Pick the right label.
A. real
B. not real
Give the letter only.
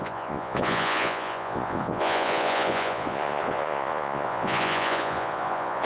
B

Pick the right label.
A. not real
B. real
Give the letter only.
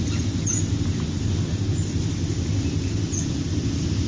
B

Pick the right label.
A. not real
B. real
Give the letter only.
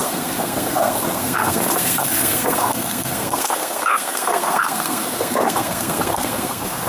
A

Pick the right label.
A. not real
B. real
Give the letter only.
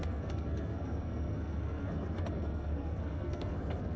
A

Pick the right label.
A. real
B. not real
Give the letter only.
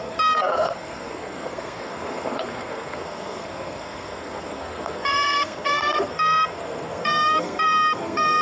B